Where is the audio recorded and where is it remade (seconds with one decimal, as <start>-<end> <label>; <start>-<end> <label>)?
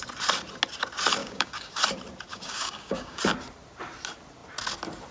0.0-1.2 recorded; 1.2-1.8 remade; 1.8-2.3 recorded; 2.3-3.2 remade; 3.2-5.1 recorded